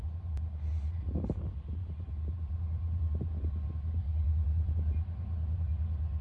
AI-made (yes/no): yes